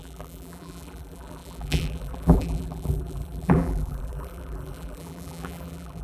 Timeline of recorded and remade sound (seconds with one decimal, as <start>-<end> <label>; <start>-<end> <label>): 0.0-6.0 remade